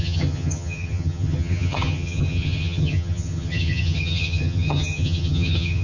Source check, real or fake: fake